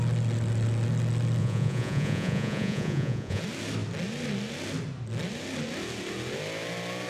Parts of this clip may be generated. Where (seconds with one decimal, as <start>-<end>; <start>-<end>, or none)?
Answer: 1.4-3.4